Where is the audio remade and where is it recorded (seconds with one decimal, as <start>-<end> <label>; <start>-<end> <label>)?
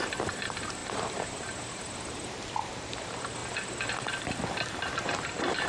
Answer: 0.0-3.4 remade; 3.4-4.1 recorded; 4.1-5.7 remade